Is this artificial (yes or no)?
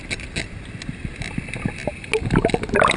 no